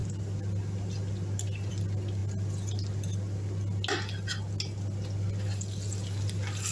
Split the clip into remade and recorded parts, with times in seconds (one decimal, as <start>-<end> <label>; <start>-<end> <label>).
0.0-6.7 recorded